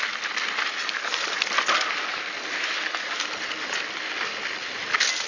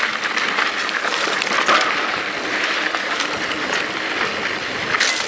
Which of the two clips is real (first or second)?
first